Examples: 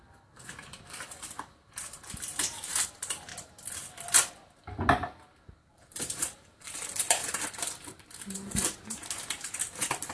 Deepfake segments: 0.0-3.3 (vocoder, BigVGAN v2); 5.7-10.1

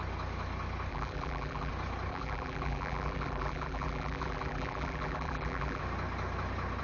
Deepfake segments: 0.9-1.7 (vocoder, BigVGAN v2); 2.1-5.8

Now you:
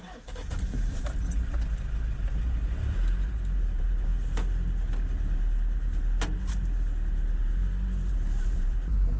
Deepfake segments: 0.0-4.1 (vocoder, BigVGAN v2); 7.4-9.2